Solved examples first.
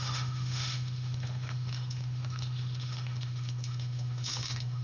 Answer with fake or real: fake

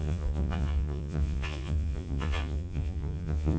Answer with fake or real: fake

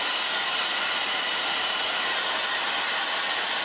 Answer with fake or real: real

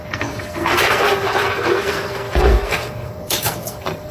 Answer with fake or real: fake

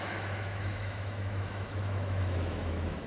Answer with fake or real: fake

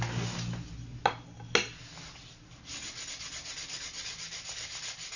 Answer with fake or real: real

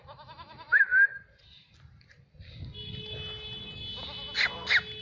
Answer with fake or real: real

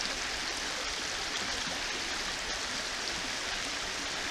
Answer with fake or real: real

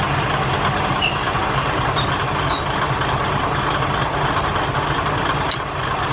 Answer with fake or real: real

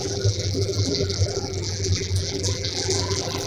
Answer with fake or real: fake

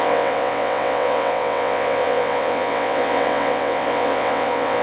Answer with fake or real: fake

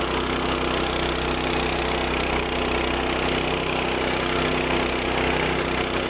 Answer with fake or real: real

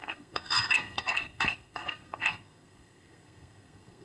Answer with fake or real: fake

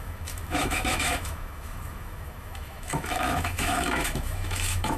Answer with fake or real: fake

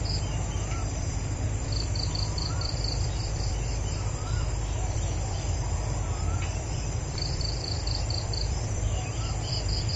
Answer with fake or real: fake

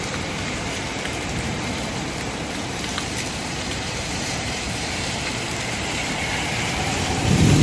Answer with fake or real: fake